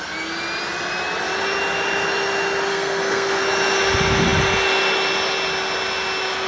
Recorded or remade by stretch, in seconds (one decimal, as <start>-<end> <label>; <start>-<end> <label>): 0.0-2.7 recorded; 2.7-3.4 remade; 3.4-6.5 recorded